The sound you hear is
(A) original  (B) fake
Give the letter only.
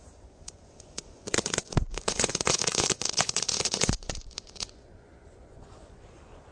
B